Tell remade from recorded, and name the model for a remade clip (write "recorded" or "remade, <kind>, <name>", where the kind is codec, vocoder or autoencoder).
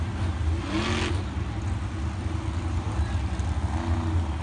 recorded